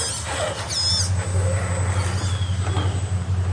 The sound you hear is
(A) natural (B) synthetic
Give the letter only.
A